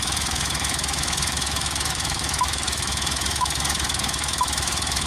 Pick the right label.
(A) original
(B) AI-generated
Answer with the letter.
B